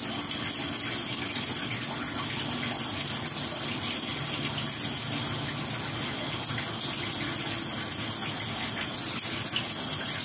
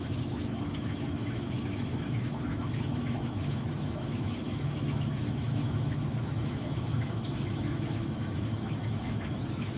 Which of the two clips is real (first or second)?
first